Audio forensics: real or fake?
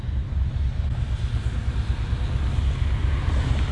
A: real